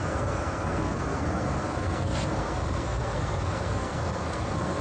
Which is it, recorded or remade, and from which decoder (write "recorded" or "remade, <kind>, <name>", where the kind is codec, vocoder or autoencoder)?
remade, codec, SNAC